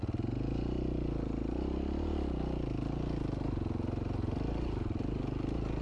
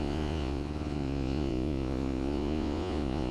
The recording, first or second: first